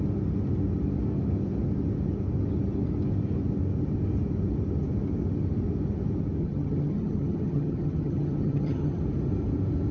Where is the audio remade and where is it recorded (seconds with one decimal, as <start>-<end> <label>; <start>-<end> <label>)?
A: 0.0-6.4 recorded; 6.4-9.0 remade; 9.0-9.9 recorded